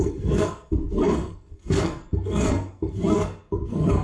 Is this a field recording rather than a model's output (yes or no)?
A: no